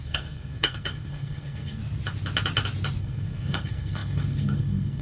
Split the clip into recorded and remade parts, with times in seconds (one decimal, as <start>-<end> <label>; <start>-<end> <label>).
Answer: 0.0-1.8 remade; 1.8-3.0 recorded; 3.0-5.0 remade